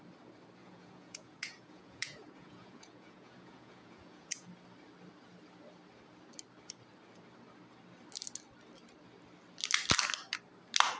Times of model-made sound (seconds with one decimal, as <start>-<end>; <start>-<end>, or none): 0.6-4.5